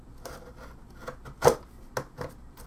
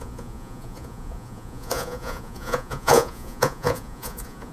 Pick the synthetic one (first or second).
second